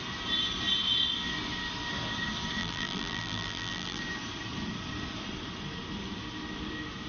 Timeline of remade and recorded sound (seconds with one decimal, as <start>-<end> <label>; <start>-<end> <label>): 0.0-2.6 recorded; 2.6-4.0 remade; 4.0-7.1 recorded

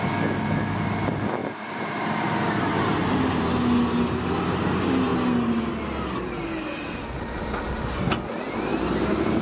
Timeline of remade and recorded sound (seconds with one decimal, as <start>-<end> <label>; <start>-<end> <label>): 0.0-1.4 recorded; 1.4-3.3 remade; 3.3-8.7 recorded; 8.7-9.4 remade

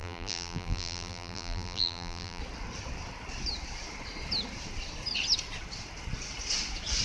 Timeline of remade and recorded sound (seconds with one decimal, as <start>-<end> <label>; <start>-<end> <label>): 0.0-2.4 remade; 2.4-7.0 recorded

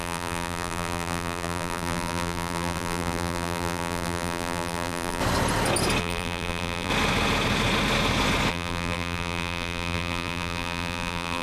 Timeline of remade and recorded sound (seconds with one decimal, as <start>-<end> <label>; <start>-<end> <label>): 0.0-5.2 remade; 5.2-6.0 recorded; 6.0-6.9 remade; 6.9-8.5 recorded; 8.5-11.4 remade

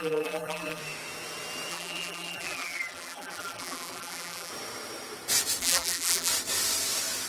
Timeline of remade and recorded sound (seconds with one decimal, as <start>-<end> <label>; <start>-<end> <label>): 0.0-0.8 remade; 0.8-1.7 recorded; 1.7-4.5 remade; 4.5-5.6 recorded; 5.6-6.3 remade; 6.3-7.3 recorded

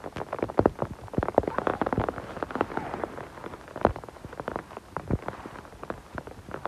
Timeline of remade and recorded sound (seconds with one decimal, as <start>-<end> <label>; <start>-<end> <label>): 0.0-1.7 remade; 1.7-3.9 recorded; 3.9-6.7 remade